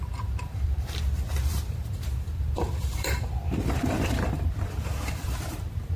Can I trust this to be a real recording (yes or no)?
no